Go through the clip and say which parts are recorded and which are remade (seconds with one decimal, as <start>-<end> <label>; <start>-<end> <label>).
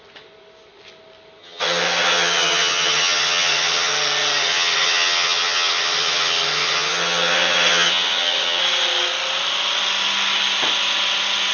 0.0-1.4 recorded; 1.4-3.9 remade; 3.9-4.4 recorded; 4.4-8.6 remade; 8.6-11.5 recorded